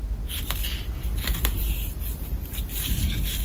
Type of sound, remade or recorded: recorded